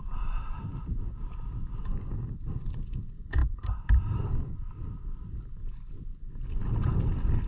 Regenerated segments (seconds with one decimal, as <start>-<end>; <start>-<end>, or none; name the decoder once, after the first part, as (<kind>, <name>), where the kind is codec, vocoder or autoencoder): none